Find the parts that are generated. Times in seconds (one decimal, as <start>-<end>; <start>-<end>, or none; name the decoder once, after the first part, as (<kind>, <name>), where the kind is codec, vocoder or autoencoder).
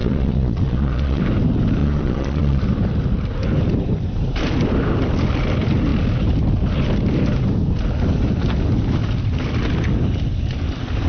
0.0-1.2 (vocoder, Vocos); 1.8-2.6